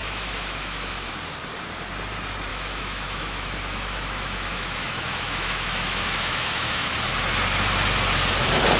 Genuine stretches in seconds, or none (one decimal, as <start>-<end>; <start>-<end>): 1.1-2.5; 6.9-8.8